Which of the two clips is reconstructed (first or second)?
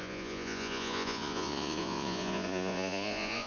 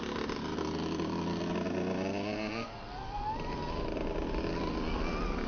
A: first